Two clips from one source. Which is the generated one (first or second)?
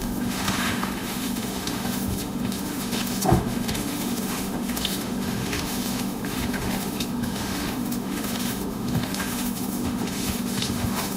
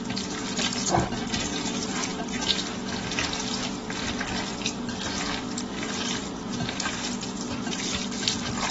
first